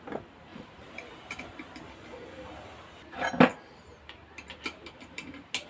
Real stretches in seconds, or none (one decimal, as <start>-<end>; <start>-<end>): 0.0-0.5; 1.8-5.7